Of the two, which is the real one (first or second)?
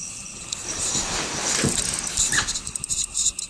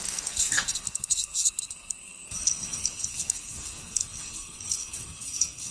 first